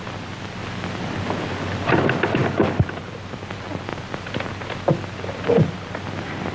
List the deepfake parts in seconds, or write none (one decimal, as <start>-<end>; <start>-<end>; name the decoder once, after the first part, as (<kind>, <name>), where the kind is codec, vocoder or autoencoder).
none